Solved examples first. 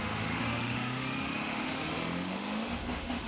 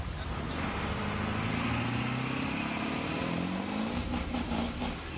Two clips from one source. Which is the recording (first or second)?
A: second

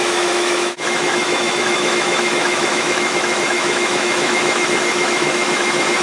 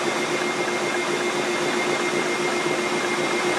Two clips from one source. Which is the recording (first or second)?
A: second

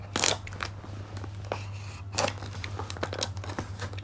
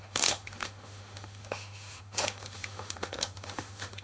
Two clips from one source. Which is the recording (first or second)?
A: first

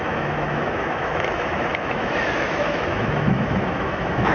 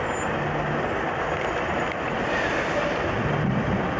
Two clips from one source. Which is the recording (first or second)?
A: second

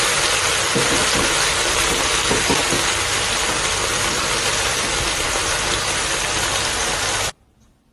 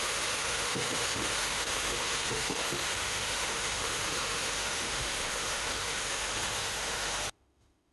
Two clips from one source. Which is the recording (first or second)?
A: first